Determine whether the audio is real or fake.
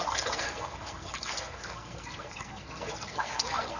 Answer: fake